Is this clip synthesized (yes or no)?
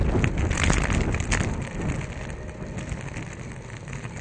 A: no